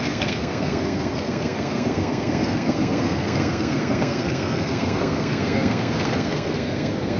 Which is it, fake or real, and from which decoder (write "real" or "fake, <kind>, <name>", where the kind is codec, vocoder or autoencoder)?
fake, codec, SNAC